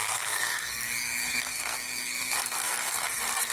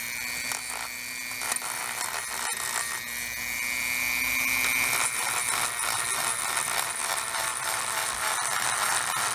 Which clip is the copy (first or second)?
first